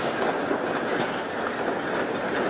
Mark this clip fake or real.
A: real